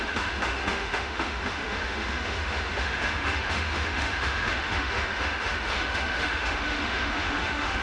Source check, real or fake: fake